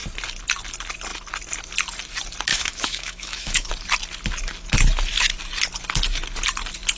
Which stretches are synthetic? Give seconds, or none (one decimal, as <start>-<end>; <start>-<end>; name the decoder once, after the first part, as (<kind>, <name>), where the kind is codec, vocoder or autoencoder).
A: 2.5-3.7 (autoencoder, DAC-VAE)